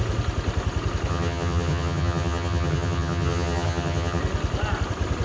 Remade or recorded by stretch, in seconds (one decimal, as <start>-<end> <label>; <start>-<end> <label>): 0.0-1.1 recorded; 1.1-4.2 remade; 4.2-5.2 recorded

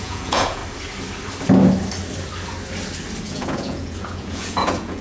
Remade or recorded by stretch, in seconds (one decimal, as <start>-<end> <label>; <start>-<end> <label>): 0.0-0.6 remade; 0.6-3.2 recorded; 3.2-5.0 remade

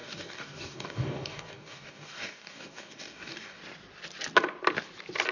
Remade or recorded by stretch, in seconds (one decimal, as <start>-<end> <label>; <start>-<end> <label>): 0.0-3.6 remade; 3.6-5.3 recorded

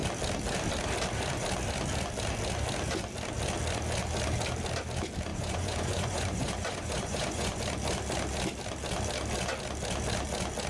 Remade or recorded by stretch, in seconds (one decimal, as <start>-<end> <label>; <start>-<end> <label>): 0.0-5.3 recorded; 5.3-7.6 remade; 7.6-10.7 recorded

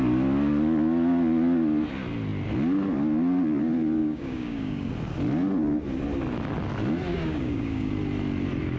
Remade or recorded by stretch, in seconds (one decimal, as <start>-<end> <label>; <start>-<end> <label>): 0.0-4.0 recorded; 4.0-4.9 remade; 4.9-7.1 recorded; 7.1-7.9 remade; 7.9-8.8 recorded

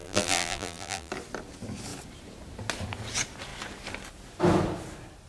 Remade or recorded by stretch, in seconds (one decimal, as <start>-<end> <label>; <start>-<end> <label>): 0.0-1.1 remade; 1.1-5.3 recorded

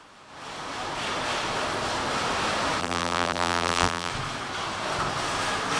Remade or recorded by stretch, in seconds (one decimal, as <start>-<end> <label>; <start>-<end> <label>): 0.0-2.8 recorded; 2.8-4.1 remade; 4.1-5.8 recorded

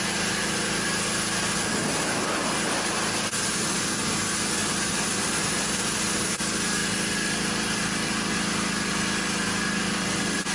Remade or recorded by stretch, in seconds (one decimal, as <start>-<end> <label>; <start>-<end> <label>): 0.0-6.8 recorded; 6.8-8.6 remade; 8.6-10.5 recorded